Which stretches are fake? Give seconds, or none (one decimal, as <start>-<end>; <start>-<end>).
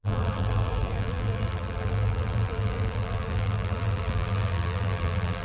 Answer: 0.0-5.4